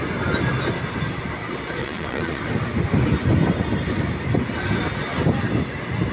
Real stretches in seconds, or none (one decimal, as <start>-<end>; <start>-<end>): 0.0-1.8; 2.4-6.1